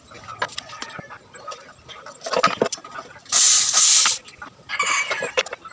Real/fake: real